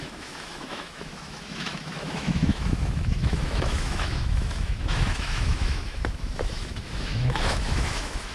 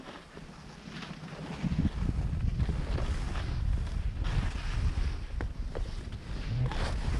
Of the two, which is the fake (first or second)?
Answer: first